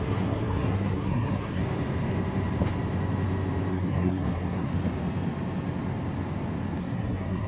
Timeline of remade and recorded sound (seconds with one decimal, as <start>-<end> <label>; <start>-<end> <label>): 0.0-1.6 remade; 1.6-3.7 recorded; 3.7-4.7 remade; 4.7-6.8 recorded; 6.8-7.5 remade